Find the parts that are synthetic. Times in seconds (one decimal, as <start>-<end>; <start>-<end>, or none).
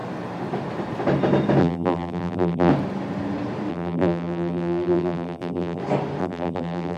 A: 1.6-2.7; 3.7-5.8; 6.2-7.0